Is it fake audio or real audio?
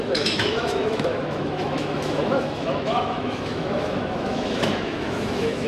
fake